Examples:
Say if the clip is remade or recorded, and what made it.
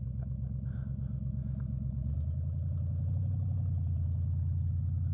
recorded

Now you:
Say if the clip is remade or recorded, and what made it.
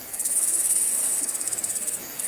remade, codec, SNAC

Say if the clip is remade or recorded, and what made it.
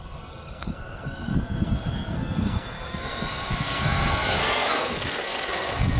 remade, codec, SNAC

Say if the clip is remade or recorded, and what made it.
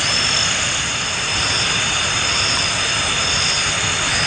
recorded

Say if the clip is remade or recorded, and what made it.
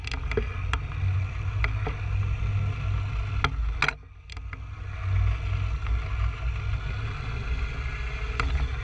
recorded